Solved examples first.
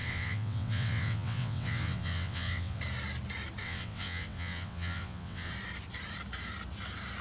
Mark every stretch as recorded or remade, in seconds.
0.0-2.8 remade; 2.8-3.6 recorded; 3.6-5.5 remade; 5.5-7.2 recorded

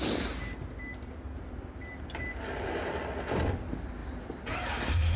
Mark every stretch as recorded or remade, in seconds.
0.0-5.2 recorded